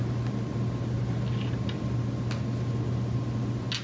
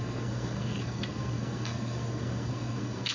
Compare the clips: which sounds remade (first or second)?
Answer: second